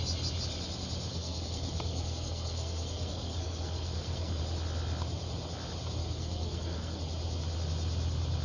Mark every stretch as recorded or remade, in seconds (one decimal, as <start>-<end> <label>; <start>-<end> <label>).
0.0-1.1 recorded; 1.1-4.4 remade; 4.4-6.0 recorded; 6.0-7.0 remade; 7.0-8.4 recorded